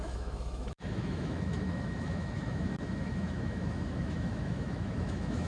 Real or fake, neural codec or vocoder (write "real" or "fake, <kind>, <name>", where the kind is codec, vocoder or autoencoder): fake, autoencoder, DAC-VAE